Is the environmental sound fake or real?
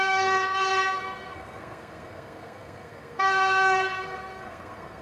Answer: fake